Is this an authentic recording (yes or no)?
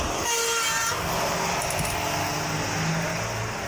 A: yes